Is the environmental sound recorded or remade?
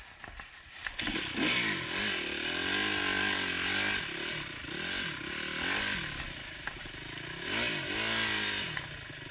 recorded